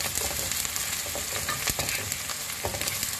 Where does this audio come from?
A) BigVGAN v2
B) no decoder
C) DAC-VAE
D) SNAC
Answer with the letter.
B